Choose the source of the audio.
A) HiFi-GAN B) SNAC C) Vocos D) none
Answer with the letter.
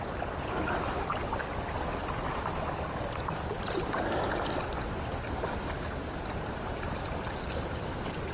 D